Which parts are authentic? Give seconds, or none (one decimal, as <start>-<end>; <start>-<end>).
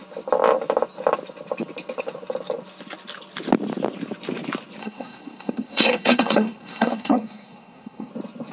0.0-4.8; 8.1-8.5